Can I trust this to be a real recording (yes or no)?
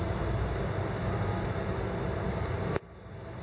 yes